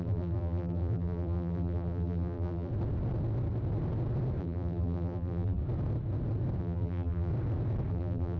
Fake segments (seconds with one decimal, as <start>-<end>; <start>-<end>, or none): 0.0-2.7; 4.4-5.6; 6.6-7.3; 7.9-8.4